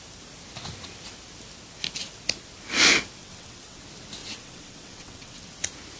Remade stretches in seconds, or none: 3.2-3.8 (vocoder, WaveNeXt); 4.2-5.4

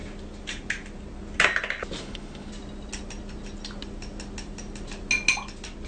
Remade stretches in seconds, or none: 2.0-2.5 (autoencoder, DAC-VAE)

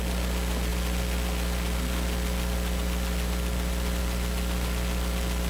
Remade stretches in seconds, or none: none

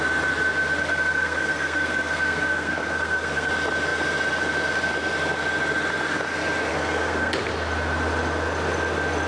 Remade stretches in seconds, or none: 0.8-3.5 (codec, SNAC); 6.7-7.3

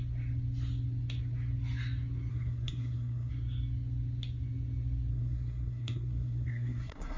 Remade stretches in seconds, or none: 2.3-3.3 (codec, SNAC); 5.1-7.2

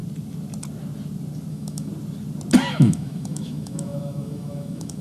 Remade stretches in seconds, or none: 1.5-1.9 (autoencoder, DAC-VAE); 2.7-5.0

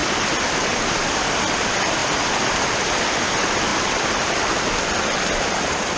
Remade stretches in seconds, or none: 0.0-2.0 (vocoder, BigVGAN v2); 2.5-6.0

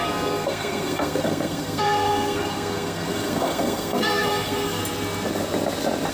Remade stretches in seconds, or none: 0.0-4.8 (codec, SNAC)